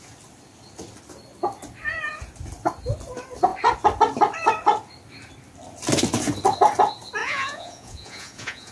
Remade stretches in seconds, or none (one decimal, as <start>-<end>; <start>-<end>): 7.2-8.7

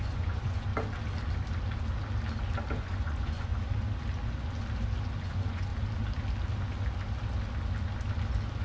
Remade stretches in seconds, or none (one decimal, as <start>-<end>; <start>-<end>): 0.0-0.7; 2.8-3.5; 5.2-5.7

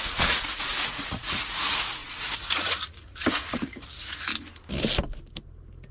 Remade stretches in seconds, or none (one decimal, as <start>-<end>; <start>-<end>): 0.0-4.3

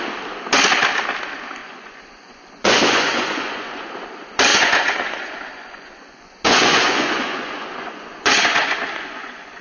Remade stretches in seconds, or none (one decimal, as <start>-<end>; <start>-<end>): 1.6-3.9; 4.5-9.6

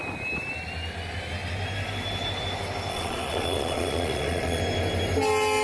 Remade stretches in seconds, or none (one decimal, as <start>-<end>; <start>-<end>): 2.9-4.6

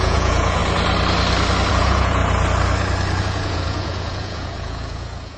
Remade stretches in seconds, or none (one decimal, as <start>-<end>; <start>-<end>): 0.0-0.6; 1.7-2.2; 3.2-5.4

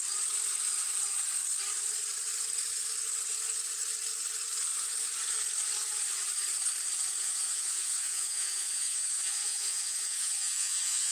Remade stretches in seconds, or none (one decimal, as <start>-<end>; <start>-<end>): 7.2-11.1